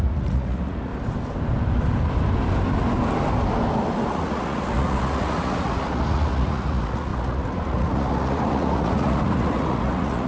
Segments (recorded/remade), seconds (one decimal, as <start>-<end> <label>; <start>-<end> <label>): 0.0-0.9 remade; 0.9-4.1 recorded; 4.1-10.3 remade